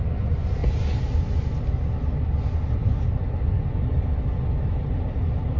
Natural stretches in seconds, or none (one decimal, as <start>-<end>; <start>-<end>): 0.0-2.8; 3.6-4.7